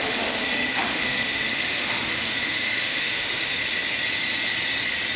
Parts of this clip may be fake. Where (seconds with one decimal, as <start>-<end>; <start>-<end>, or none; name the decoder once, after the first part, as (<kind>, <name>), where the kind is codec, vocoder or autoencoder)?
0.0-3.6 (autoencoder, DAC-VAE)